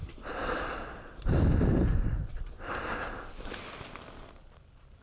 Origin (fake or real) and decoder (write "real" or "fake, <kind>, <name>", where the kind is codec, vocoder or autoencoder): real